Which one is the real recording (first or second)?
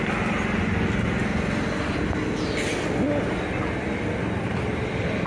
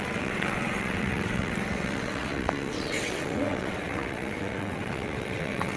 first